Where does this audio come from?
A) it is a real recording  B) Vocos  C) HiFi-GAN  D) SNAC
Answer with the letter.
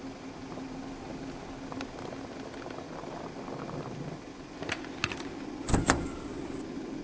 A